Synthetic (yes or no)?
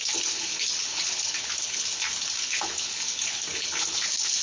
yes